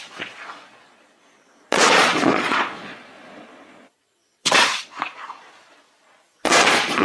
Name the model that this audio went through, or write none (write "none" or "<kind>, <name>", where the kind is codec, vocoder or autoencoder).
vocoder, Vocos